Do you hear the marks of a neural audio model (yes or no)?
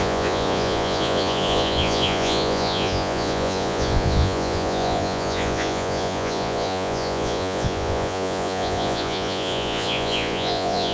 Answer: yes